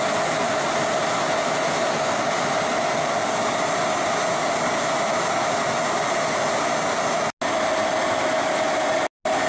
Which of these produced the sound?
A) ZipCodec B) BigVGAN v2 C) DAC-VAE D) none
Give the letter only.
D